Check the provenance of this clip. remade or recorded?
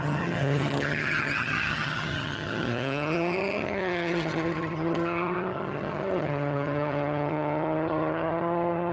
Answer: remade